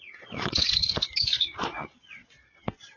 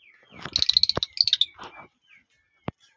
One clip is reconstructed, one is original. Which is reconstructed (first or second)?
first